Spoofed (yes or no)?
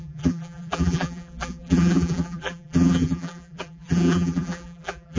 yes